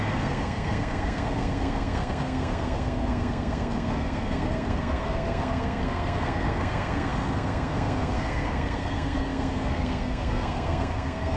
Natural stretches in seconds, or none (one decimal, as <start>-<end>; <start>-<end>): none